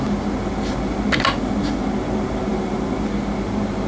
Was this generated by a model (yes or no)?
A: no